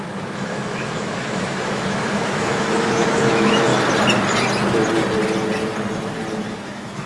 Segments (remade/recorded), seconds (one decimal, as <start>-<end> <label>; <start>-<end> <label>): 0.0-3.7 remade; 3.7-6.5 recorded; 6.5-7.1 remade